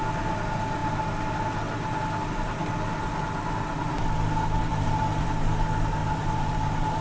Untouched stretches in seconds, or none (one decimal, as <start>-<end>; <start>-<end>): 0.0-4.7; 5.3-6.0